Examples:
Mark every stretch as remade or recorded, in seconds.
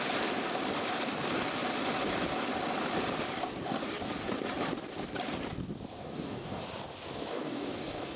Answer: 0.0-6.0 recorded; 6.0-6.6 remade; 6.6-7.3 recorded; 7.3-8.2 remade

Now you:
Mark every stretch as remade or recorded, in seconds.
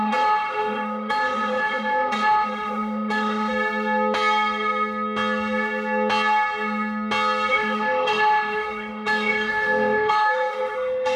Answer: 0.0-3.5 remade; 3.5-7.5 recorded; 7.5-11.2 remade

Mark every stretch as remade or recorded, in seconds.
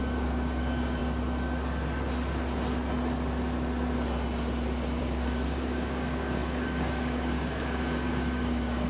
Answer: 0.0-1.0 remade; 1.0-5.0 recorded; 5.0-8.9 remade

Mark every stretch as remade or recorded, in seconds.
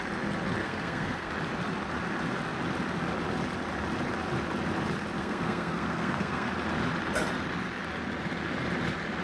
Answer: 0.0-0.6 recorded; 0.6-1.3 remade; 1.3-5.2 recorded; 5.2-6.5 remade; 6.5-9.2 recorded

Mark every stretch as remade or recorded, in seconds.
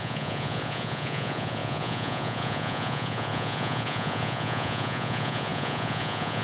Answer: 0.0-6.4 remade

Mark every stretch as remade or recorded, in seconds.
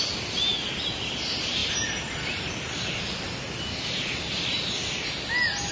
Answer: 0.0-5.7 recorded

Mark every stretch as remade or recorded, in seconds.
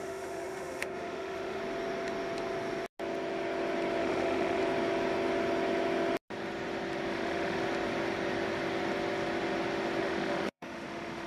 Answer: 0.0-1.6 remade; 1.6-4.0 recorded; 4.0-4.6 remade; 4.6-7.1 recorded; 7.1-7.6 remade; 7.6-10.0 recorded; 10.0-11.3 remade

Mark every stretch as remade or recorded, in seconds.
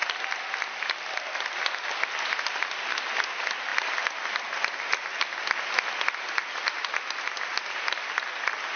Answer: 0.0-8.8 recorded